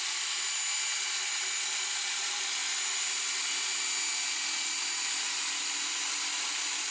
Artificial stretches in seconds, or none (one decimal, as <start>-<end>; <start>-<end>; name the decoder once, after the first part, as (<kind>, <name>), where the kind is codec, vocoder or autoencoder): none

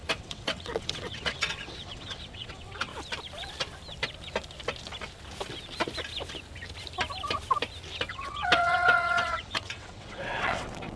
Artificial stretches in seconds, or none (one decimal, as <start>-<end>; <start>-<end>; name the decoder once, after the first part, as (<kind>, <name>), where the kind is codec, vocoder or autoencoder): 0.0-2.9 (vocoder, WaveNeXt); 8.1-11.0

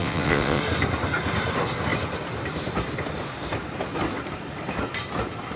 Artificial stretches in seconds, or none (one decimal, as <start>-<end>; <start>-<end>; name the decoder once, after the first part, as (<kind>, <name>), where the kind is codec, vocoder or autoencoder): 0.0-0.6 (vocoder, WaveNeXt)

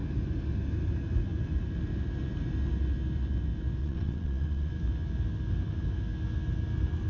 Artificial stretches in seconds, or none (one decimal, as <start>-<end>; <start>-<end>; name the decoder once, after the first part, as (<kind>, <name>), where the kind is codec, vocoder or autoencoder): 3.8-4.7 (vocoder, WaveNeXt)

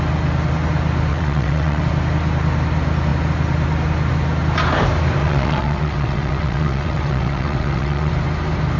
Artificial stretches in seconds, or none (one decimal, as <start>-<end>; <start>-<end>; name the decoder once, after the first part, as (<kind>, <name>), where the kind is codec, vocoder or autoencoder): 1.1-1.8 (vocoder, WaveNeXt); 5.2-8.1

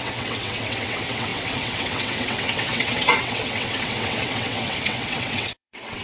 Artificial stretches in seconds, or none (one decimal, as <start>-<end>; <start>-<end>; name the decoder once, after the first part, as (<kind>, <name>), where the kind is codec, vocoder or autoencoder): 0.0-6.0 (vocoder, WaveNeXt)

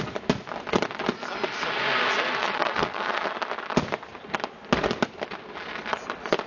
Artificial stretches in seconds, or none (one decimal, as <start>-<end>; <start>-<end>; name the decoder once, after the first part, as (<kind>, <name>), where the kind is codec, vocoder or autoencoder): 2.4-3.2 (vocoder, WaveNeXt)

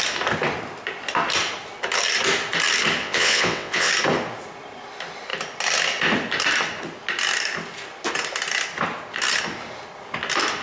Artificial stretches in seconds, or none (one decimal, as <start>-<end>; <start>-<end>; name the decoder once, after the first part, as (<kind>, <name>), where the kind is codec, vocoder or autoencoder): 3.0-3.9 (vocoder, WaveNeXt)